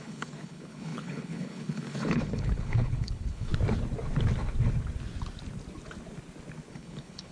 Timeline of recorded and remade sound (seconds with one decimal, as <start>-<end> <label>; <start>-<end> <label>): 0.0-3.5 remade; 3.5-6.7 recorded; 6.7-7.3 remade